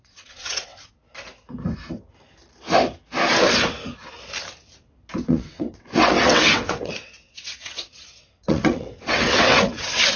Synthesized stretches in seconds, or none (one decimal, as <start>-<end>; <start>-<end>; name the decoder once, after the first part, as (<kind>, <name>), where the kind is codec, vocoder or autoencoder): 0.0-1.0 (vocoder, WaveNeXt); 5.2-10.2